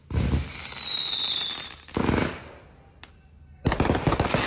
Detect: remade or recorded recorded